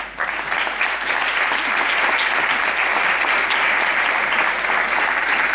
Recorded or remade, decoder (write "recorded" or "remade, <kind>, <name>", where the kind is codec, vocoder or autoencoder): recorded